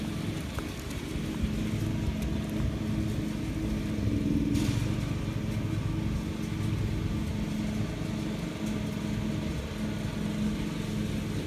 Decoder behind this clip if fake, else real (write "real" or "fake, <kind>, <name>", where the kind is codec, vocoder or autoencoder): real